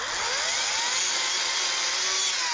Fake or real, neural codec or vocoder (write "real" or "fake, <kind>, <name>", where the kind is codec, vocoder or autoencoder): real